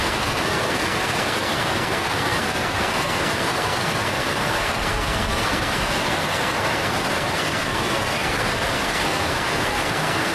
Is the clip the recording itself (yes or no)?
no